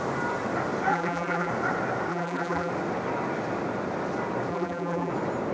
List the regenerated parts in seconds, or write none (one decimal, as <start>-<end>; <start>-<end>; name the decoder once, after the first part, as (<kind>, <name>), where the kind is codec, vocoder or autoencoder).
0.9-1.5 (vocoder, BigVGAN v2); 2.1-2.7; 4.5-5.1